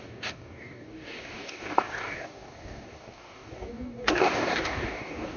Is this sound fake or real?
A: fake